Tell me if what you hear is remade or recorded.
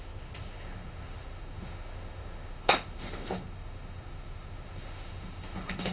remade